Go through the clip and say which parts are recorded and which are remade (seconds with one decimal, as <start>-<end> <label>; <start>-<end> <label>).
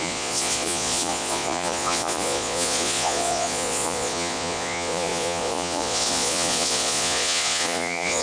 0.0-8.2 remade